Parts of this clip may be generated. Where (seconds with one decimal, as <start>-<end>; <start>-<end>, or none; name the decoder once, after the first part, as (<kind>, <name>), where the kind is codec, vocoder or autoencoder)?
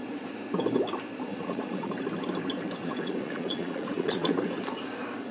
1.3-1.9 (vocoder, Vocos); 2.8-4.3